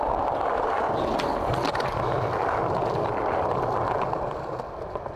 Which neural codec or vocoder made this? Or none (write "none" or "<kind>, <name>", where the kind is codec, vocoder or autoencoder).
none